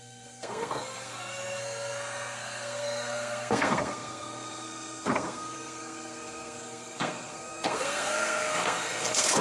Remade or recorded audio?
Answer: remade